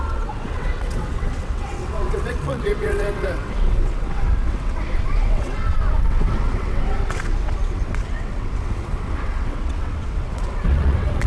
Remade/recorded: remade